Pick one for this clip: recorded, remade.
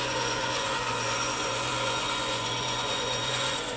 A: remade